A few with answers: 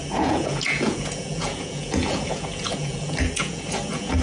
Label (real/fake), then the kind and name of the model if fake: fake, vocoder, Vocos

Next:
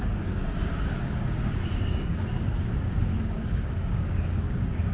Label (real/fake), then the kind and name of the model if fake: fake, codec, DAC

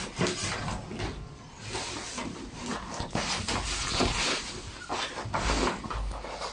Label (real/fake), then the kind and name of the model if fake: real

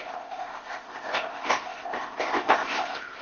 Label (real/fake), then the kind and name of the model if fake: fake, codec, ZipCodec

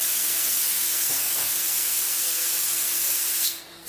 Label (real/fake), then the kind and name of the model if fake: fake, codec, SNAC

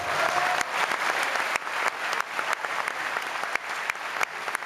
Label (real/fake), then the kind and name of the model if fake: real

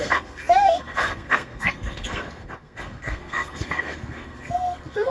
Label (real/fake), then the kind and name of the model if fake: fake, codec, SNAC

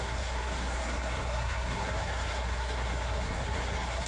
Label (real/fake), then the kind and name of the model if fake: fake, codec, SNAC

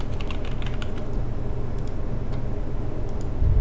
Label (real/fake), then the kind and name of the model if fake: real